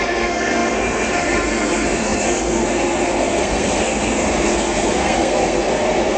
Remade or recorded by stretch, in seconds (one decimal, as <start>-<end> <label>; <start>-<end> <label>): 0.0-6.2 remade

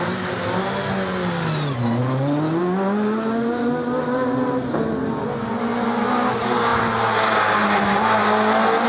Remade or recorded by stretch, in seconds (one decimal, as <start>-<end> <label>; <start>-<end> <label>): 0.0-8.9 recorded

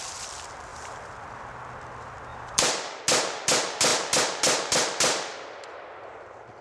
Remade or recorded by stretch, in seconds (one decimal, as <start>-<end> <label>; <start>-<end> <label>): 0.0-2.3 recorded; 2.3-3.0 remade; 3.0-6.6 recorded

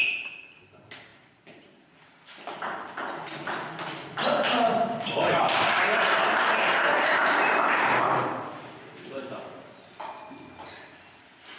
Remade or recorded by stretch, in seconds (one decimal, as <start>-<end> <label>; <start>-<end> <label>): 0.0-7.2 recorded; 7.2-9.3 remade; 9.3-11.6 recorded

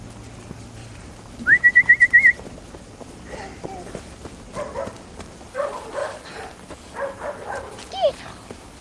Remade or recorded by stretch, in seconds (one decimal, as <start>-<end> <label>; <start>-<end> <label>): 0.0-0.8 recorded; 0.8-2.8 remade; 2.8-8.8 recorded

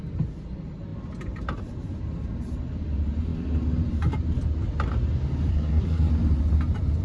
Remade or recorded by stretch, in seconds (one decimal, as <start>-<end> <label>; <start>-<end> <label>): 0.0-5.5 recorded; 5.5-6.1 remade; 6.1-7.0 recorded

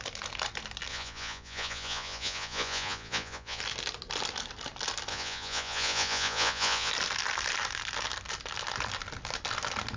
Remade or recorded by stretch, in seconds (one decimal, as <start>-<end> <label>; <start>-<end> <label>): 0.0-0.9 recorded; 0.9-3.6 remade; 3.6-5.1 recorded; 5.1-6.9 remade; 6.9-10.0 recorded

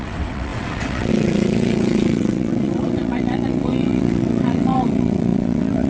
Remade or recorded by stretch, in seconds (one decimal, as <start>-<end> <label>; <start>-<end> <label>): 0.0-5.9 remade